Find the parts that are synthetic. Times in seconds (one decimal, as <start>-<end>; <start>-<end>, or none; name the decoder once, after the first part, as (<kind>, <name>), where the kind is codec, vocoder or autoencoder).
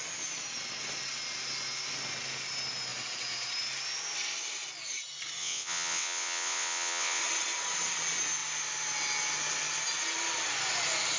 5.4-7.2 (vocoder, WaveNeXt)